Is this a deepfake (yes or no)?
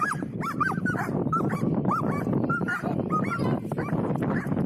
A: yes